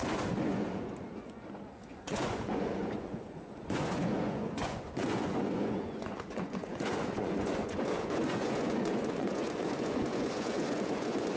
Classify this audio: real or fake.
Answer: fake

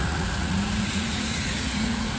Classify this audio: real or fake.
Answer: fake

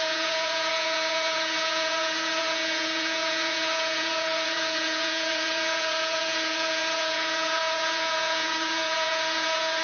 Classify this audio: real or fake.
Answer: fake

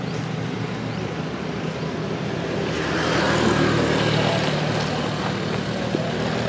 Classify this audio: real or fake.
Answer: real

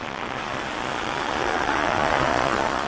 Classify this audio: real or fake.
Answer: fake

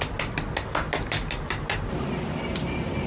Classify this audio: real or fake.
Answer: real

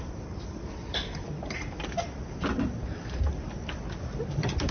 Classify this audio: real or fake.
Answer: real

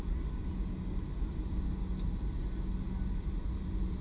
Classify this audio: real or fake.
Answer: real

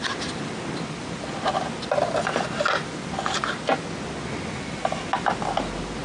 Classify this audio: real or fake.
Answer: real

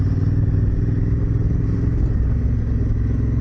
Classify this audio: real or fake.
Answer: real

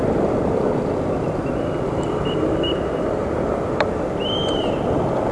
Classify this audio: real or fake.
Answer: real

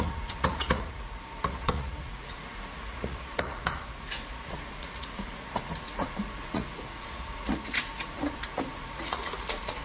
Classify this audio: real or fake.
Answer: fake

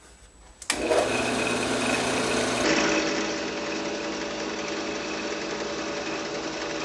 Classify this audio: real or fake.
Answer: real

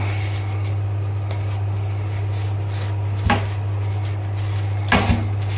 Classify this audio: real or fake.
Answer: real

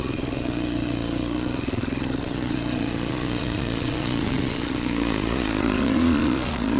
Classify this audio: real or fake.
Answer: fake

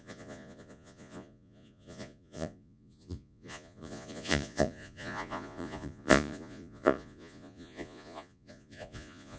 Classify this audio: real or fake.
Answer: fake